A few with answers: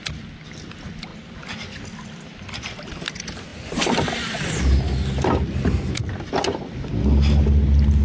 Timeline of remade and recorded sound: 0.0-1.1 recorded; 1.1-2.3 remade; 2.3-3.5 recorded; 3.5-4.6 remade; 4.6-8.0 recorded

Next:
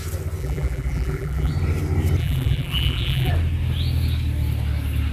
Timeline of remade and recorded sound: 0.0-0.4 recorded; 0.4-1.5 remade; 1.5-2.2 recorded; 2.2-3.3 remade; 3.3-5.1 recorded

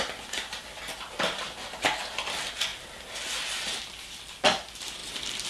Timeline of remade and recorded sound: 0.0-5.5 recorded

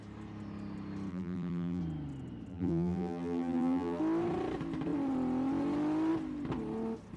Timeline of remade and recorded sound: 0.0-1.1 recorded; 1.1-1.8 remade; 1.8-2.5 recorded; 2.5-4.0 remade; 4.0-7.2 recorded

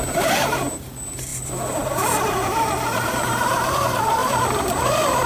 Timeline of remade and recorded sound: 0.0-1.3 remade; 1.3-1.8 recorded; 1.8-4.2 remade; 4.2-5.3 recorded

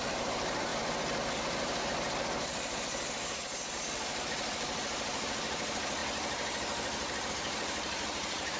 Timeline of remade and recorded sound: 0.0-0.7 remade; 0.7-3.8 recorded; 3.8-6.0 remade; 6.0-7.3 recorded; 7.3-8.6 remade